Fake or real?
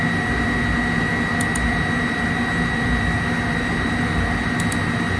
real